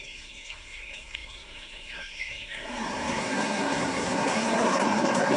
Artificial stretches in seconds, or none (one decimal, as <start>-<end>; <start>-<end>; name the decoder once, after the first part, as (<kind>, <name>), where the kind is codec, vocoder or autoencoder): 0.0-5.4 (codec, SNAC)